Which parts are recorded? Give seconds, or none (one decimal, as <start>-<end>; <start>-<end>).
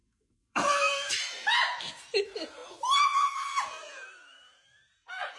1.1-5.4